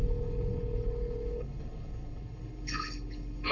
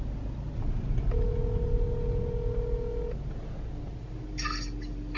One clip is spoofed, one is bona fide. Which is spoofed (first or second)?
first